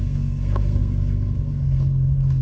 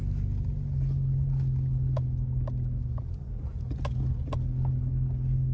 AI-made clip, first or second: first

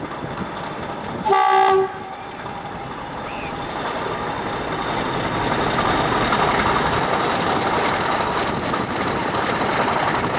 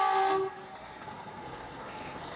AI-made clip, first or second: second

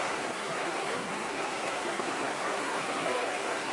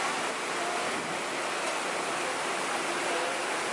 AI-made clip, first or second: first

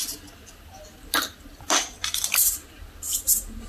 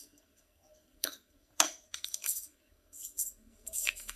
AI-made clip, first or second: second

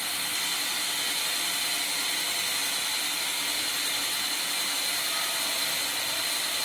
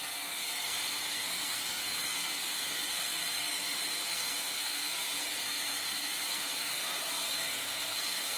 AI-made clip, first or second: second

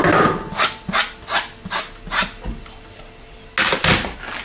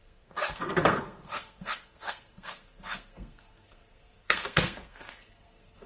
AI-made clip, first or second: second